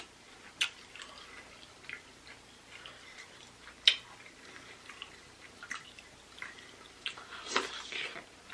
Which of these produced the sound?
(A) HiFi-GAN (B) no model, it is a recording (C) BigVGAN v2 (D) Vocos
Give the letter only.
B